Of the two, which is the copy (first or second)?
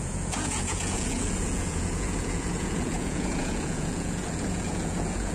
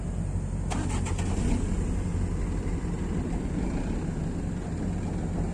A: first